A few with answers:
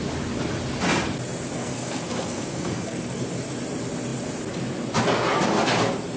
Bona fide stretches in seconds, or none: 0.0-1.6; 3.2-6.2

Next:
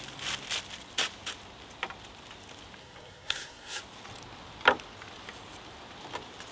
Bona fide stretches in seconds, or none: 0.0-2.8; 3.8-6.5

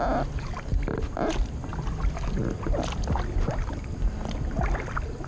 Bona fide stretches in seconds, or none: 0.0-5.3

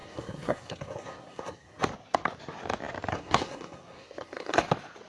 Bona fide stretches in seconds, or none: 1.8-3.1; 4.6-5.1

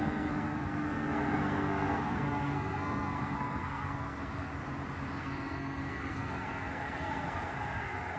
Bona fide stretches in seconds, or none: 4.5-5.2

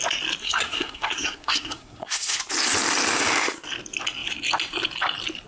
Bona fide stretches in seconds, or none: 0.0-0.4; 2.4-5.5